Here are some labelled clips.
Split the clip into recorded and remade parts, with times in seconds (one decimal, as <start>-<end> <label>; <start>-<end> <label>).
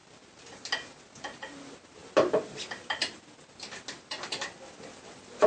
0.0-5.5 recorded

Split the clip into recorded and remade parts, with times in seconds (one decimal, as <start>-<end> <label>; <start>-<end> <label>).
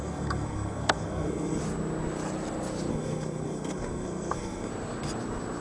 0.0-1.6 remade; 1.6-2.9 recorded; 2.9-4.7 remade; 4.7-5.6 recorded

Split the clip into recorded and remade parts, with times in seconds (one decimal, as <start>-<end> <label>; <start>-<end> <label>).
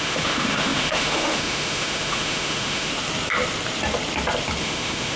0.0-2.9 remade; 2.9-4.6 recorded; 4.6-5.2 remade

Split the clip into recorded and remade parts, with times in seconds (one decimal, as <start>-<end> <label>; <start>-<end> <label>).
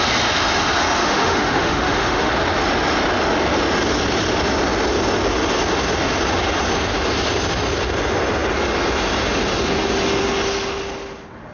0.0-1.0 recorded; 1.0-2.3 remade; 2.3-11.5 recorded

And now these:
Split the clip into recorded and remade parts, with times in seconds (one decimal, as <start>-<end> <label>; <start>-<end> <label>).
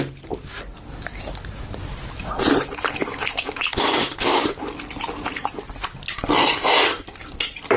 0.0-3.1 recorded; 3.1-4.3 remade; 4.3-7.8 recorded